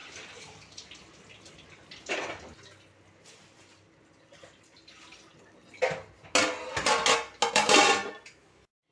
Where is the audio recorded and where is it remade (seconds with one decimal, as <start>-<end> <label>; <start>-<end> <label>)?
0.0-4.1 recorded; 4.1-5.3 remade; 5.3-7.5 recorded; 7.5-8.0 remade; 8.0-8.9 recorded

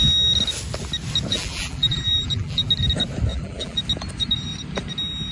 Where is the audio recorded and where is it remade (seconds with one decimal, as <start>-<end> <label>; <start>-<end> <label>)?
0.0-1.3 recorded; 1.3-2.7 remade; 2.7-3.3 recorded; 3.3-3.8 remade; 3.8-5.3 recorded

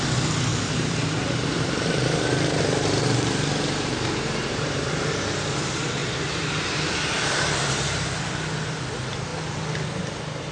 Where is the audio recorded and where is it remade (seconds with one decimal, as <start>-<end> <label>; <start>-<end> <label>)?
0.0-0.5 recorded; 0.5-4.9 remade; 4.9-6.0 recorded; 6.0-6.5 remade; 6.5-10.5 recorded